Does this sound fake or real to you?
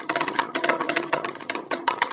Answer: fake